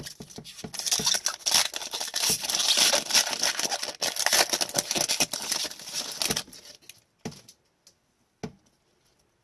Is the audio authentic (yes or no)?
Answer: yes